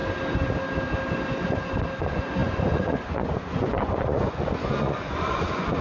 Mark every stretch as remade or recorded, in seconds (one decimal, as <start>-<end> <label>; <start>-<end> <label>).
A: 0.0-2.0 recorded; 2.0-5.8 remade